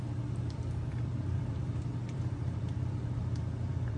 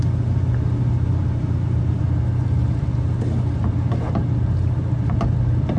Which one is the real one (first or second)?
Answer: second